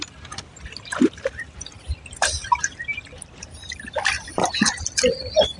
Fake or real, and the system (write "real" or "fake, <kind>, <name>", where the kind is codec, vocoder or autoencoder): fake, vocoder, BigVGAN v2